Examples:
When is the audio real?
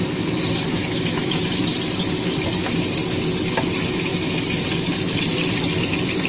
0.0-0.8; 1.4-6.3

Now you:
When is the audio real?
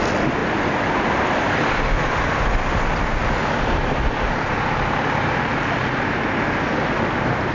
0.0-7.5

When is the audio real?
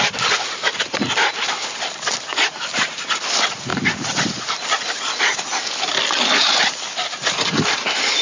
0.0-8.2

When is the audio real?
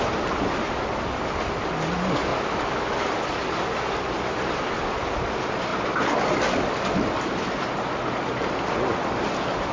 0.0-9.7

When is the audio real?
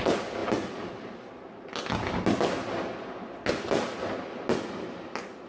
0.0-5.5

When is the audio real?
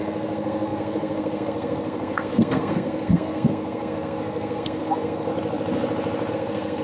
5.3-6.3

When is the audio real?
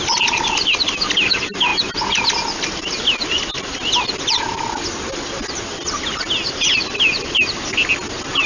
0.0-8.5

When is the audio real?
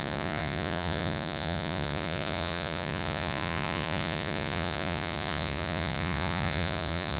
none